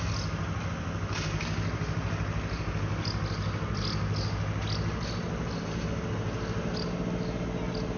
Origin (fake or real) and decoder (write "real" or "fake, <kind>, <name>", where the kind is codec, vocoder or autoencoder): real